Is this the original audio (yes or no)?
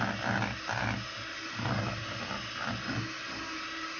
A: yes